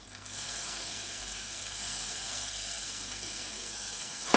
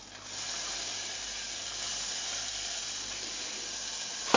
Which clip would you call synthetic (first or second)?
first